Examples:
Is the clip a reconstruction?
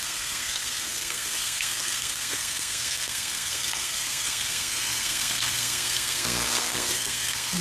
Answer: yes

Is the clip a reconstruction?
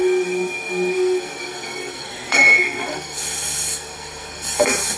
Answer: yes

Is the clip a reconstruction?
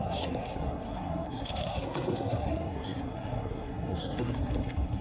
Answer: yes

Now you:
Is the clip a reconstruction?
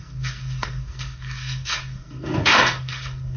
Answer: yes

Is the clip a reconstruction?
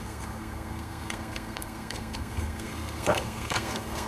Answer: yes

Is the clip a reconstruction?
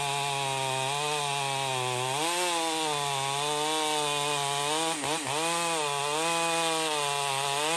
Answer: no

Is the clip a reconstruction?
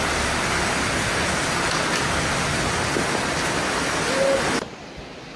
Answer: no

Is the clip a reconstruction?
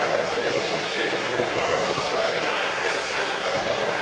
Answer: yes